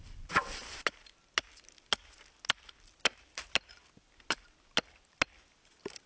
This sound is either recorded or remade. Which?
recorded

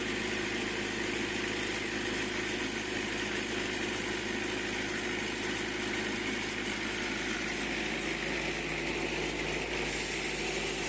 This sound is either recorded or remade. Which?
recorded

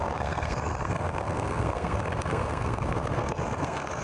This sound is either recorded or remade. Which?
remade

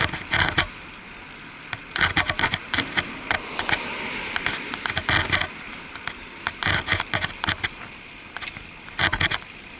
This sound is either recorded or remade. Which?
recorded